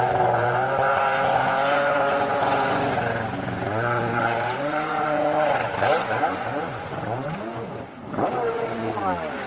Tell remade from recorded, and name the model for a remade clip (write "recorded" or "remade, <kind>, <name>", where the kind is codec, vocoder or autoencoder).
remade, vocoder, Vocos